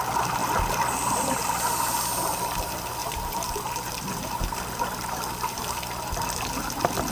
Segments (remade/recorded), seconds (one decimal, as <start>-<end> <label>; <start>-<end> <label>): 0.0-3.0 recorded; 3.0-5.8 remade; 5.8-7.1 recorded